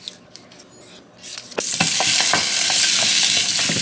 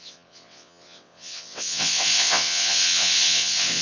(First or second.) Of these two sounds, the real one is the first